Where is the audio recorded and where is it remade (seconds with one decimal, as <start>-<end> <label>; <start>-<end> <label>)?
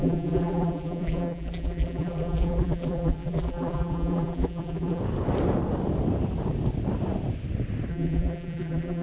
0.0-5.0 remade; 5.0-7.9 recorded; 7.9-9.0 remade